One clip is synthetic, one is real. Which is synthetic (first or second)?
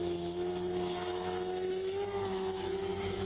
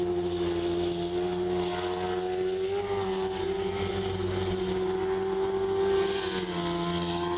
first